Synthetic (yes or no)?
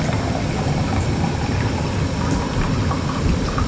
no